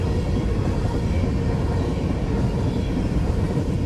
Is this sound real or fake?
real